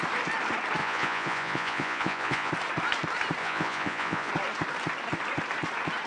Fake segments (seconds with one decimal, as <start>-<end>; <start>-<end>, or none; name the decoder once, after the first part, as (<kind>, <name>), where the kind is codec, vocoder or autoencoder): 0.8-2.5 (vocoder, Vocos); 3.4-4.3